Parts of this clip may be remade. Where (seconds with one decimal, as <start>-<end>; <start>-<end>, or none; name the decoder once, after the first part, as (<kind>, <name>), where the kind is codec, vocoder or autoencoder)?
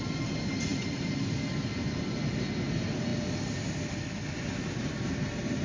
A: none